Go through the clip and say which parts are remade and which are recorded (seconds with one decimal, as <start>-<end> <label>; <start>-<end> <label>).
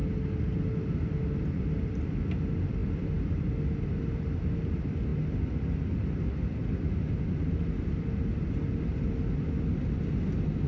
0.0-10.7 recorded